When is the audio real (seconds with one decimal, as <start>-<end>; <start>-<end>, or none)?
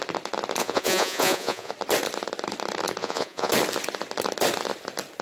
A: 0.0-0.6; 1.7-3.0; 3.5-5.2